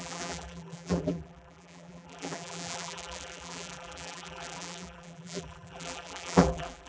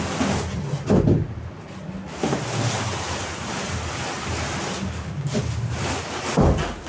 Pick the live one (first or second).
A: second